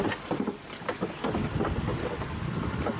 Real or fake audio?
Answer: real